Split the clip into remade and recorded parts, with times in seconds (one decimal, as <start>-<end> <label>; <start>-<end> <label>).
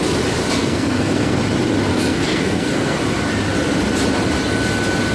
0.0-0.6 recorded; 0.6-1.4 remade; 1.4-1.9 recorded; 1.9-3.0 remade; 3.0-5.1 recorded